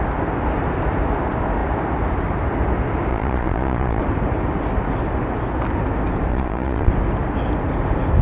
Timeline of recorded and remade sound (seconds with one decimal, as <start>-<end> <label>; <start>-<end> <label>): 0.0-3.1 recorded; 3.1-4.0 remade; 4.0-6.3 recorded; 6.3-6.9 remade; 6.9-8.2 recorded